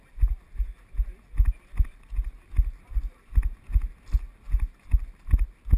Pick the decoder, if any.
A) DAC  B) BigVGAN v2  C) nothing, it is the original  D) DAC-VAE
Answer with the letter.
C